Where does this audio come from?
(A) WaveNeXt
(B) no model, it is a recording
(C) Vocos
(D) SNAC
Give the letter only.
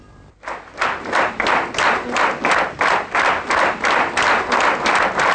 B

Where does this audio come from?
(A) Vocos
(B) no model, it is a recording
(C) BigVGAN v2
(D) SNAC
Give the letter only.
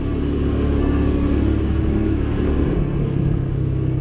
D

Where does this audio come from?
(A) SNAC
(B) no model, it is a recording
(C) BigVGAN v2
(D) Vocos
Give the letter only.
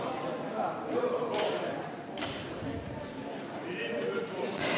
B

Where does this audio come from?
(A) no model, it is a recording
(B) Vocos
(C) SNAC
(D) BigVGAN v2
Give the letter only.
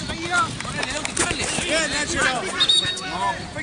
A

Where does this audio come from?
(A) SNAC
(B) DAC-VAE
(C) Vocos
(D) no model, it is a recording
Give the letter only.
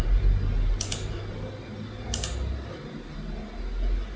D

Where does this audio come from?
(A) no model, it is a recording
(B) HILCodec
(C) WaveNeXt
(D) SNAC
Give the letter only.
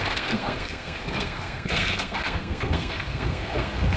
D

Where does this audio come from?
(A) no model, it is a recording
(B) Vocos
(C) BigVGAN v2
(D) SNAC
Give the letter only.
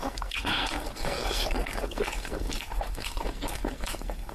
D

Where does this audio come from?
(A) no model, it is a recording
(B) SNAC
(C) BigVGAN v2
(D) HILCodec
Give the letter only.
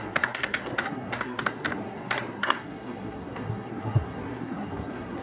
B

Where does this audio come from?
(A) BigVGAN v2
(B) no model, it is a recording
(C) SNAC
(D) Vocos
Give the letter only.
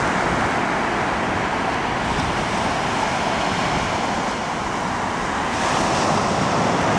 B